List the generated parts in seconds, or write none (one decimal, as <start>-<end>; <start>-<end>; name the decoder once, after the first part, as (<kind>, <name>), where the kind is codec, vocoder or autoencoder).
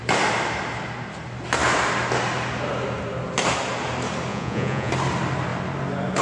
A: 4.3-4.9 (vocoder, Vocos)